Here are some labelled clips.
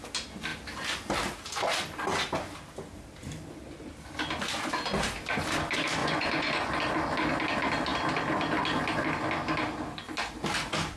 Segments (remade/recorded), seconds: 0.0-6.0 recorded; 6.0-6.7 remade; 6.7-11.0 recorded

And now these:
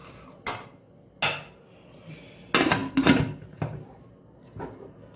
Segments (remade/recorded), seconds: 0.0-5.2 recorded

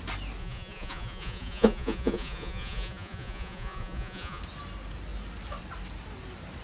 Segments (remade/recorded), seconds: 0.0-0.4 recorded; 0.4-4.4 remade; 4.4-6.6 recorded

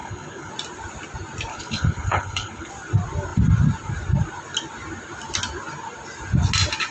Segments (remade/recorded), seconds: 0.0-0.5 remade; 0.5-1.5 recorded; 1.5-2.7 remade; 2.7-6.9 recorded

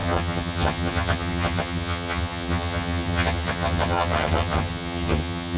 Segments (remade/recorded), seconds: 0.0-5.6 remade